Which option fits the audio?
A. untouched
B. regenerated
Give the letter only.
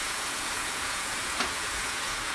B